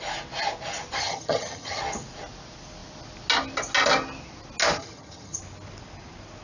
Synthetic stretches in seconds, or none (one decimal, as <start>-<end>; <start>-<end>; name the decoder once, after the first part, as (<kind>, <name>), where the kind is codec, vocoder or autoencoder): 1.0-1.8 (vocoder, HiFi-GAN); 4.8-5.4